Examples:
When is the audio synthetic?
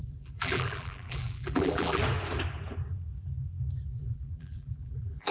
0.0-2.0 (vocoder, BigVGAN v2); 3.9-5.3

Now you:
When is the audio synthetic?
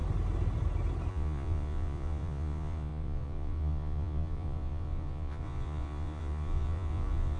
1.1-7.4 (vocoder, Vocos)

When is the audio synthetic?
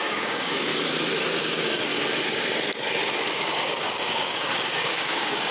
0.0-0.7 (codec, DAC); 1.4-1.9; 3.3-5.5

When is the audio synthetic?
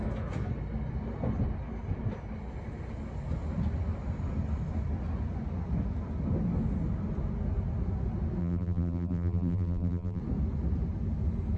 8.4-10.2 (vocoder, BigVGAN v2)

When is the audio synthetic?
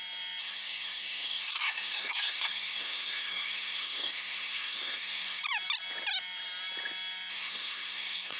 0.4-5.4 (codec, SNAC); 7.3-8.4